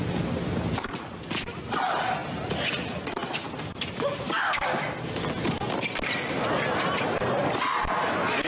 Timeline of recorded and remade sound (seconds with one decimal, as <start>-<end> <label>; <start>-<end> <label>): 0.0-8.5 recorded